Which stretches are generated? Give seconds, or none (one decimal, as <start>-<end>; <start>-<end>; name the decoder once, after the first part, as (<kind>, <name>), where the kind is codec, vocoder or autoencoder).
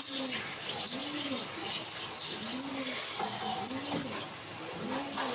none